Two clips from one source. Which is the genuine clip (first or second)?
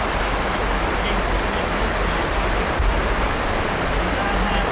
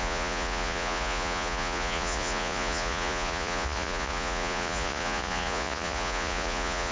first